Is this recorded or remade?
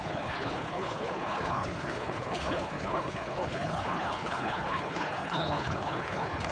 remade